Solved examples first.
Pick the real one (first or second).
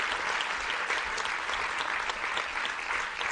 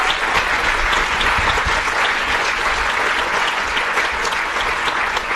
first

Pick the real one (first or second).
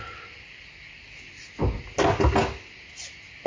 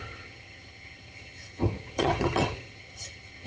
first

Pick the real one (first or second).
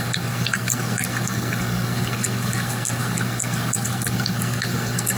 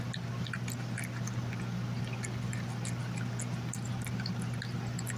second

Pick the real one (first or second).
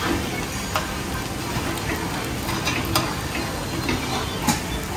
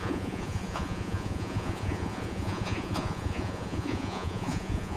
first